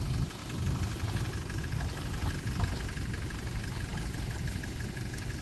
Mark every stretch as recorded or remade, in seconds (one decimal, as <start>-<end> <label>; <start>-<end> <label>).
0.0-5.4 recorded